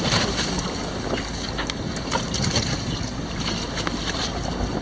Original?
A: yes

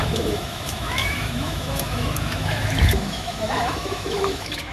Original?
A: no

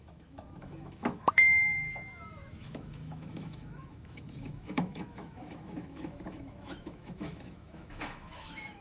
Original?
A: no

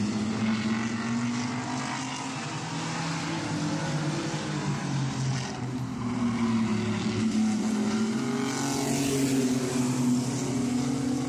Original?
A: yes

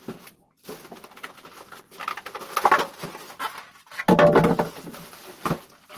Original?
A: yes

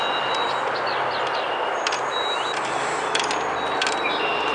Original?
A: yes